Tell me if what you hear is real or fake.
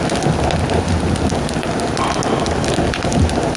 real